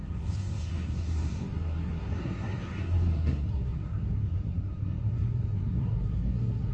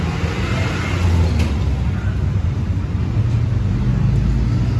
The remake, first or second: first